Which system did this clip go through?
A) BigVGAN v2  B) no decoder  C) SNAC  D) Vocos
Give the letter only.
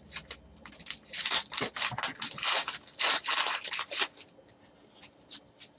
B